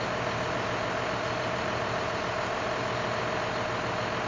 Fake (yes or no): no